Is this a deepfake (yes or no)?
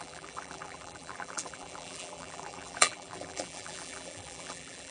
yes